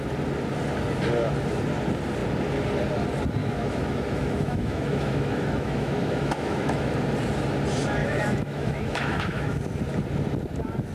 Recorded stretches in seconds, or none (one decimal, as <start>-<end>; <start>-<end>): 0.0-3.4; 6.9-8.0; 9.6-10.9